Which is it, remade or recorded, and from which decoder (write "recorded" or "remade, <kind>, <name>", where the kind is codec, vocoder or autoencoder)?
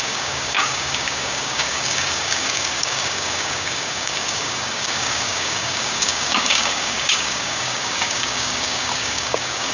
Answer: remade, codec, DAC